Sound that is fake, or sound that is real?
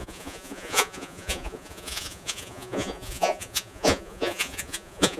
fake